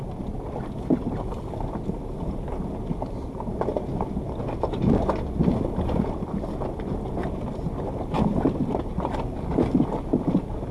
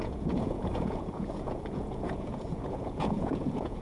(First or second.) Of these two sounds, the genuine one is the first